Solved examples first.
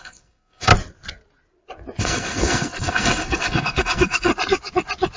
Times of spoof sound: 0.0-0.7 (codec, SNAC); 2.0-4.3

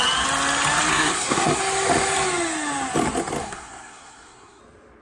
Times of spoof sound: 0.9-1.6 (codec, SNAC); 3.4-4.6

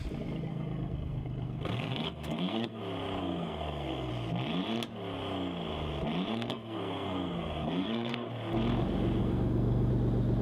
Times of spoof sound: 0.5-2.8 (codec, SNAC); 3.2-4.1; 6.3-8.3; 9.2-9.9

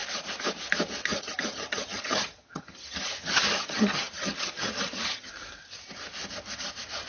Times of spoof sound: 1.1-5.3 (vocoder, HiFi-GAN)

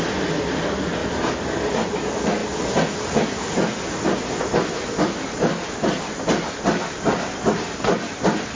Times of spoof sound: none

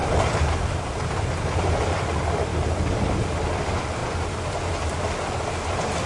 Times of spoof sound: 0.0-1.8 (vocoder, BigVGAN v2); 2.5-3.1

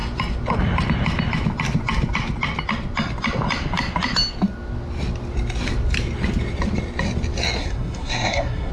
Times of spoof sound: 7.6-8.7 (codec, SNAC)

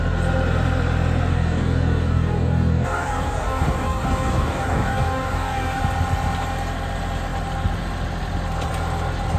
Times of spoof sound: 1.3-5.8 (codec, DAC)